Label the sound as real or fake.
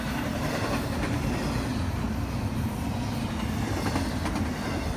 real